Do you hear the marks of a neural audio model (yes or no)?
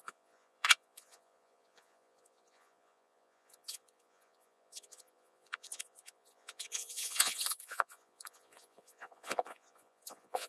yes